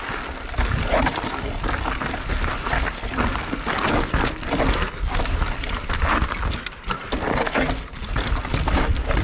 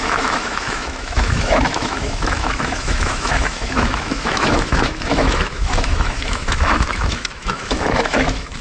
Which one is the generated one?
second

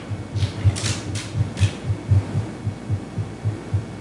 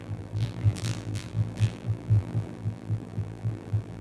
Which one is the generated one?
second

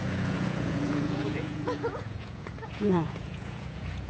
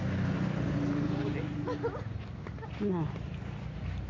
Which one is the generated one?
first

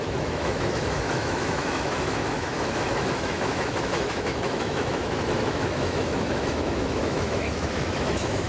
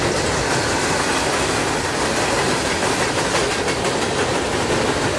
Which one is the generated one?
first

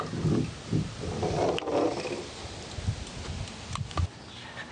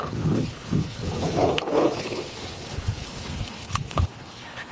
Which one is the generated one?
second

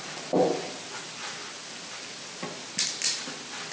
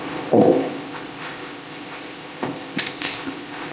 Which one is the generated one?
second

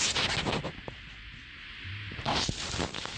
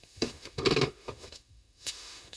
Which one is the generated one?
second